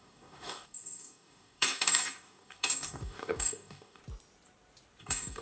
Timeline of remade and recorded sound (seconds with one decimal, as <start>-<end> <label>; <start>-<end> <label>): 0.0-4.0 remade; 4.0-5.0 recorded; 5.0-5.4 remade